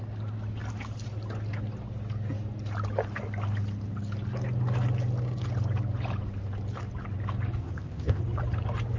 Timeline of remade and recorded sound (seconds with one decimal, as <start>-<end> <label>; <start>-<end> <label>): 0.0-7.6 recorded; 7.6-8.2 remade; 8.2-9.0 recorded